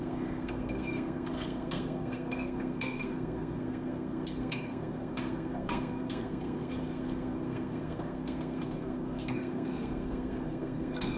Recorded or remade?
remade